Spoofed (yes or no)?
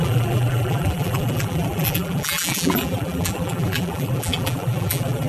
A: yes